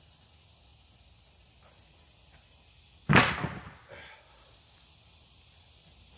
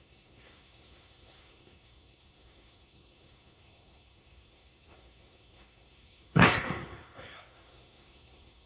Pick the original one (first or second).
first